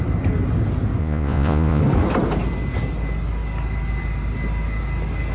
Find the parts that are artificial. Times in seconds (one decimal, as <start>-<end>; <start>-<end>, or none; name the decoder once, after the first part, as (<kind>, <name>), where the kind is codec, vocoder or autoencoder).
1.0-1.8 (vocoder, Vocos)